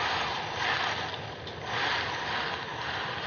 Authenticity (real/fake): real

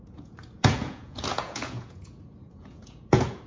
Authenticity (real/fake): fake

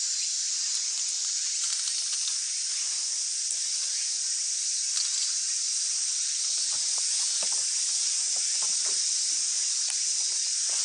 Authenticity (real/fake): real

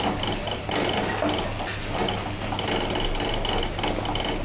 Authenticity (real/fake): real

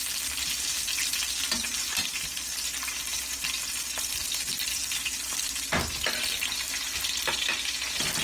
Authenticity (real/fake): real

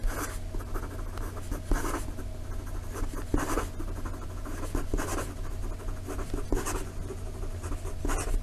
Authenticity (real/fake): real